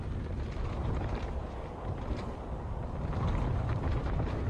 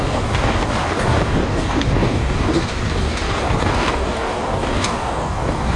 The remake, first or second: second